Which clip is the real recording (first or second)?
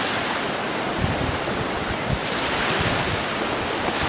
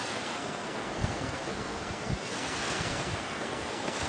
first